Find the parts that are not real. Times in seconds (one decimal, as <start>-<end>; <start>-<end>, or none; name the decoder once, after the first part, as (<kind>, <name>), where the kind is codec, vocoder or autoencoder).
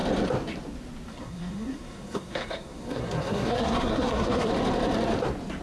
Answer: 1.1-4.5 (codec, SNAC)